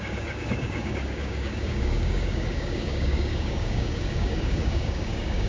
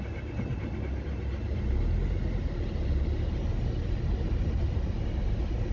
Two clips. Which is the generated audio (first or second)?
first